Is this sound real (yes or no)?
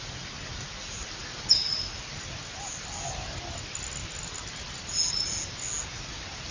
yes